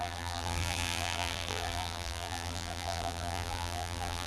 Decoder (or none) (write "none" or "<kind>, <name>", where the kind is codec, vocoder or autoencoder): vocoder, BigVGAN v2